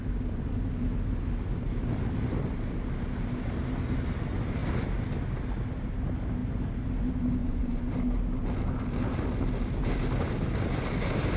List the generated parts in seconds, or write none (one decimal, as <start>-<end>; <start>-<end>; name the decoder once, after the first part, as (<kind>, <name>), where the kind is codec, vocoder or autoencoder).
7.4-7.9 (vocoder, Vocos)